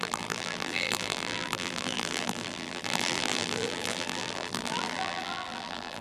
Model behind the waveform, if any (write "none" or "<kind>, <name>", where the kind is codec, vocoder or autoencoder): vocoder, BigVGAN v2